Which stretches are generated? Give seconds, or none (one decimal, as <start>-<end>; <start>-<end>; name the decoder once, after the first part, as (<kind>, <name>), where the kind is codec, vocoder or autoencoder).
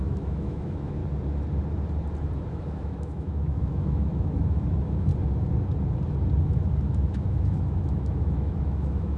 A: 0.0-1.0 (autoencoder, DAC-VAE); 2.4-5.1; 6.4-9.2